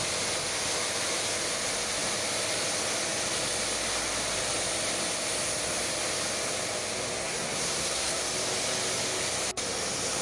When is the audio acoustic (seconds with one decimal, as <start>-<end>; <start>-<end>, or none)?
0.0-7.2; 8.2-10.2